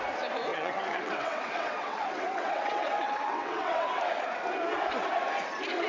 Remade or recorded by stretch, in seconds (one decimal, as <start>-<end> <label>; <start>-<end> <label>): 0.0-0.5 recorded; 0.5-4.0 remade; 4.0-5.9 recorded